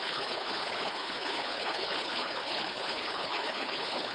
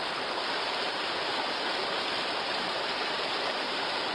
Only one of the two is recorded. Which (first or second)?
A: second